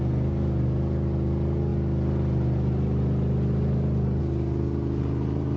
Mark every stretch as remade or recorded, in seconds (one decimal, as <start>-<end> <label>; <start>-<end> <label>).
0.0-5.6 recorded

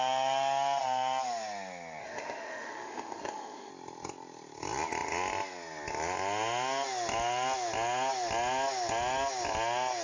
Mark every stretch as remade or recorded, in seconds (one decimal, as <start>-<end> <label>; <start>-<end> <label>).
0.0-2.0 recorded; 2.0-3.7 remade; 3.7-10.0 recorded